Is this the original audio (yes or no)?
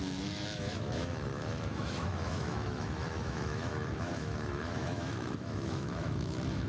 no